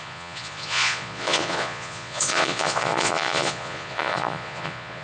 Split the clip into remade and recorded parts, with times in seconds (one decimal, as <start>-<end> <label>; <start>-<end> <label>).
0.0-5.0 remade